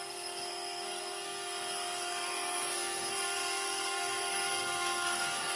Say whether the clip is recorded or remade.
remade